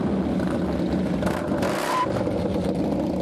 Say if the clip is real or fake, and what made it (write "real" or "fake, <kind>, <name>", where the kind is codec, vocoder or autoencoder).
real